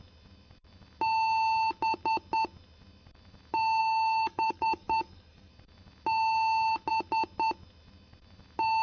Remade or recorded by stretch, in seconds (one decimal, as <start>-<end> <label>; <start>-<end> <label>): 0.0-3.8 recorded; 3.8-5.5 remade; 5.5-8.8 recorded

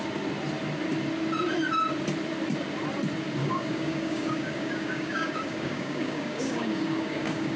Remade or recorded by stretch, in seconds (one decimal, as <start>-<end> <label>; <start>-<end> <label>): 0.0-3.4 recorded; 3.4-7.6 remade